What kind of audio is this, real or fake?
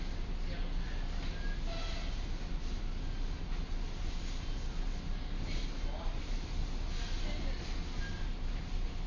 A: real